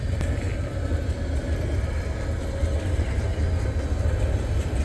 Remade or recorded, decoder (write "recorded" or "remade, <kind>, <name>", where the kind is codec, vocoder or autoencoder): recorded